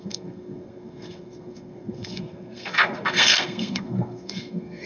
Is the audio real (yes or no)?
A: no